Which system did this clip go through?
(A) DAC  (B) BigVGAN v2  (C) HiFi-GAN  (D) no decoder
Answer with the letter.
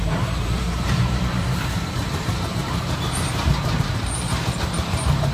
B